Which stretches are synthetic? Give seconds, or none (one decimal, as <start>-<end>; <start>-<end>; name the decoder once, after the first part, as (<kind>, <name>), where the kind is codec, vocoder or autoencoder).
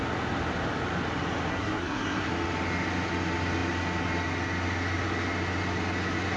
1.5-2.3 (codec, SNAC)